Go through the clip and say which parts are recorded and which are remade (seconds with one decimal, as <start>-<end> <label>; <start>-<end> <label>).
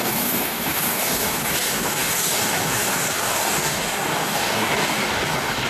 0.0-5.7 remade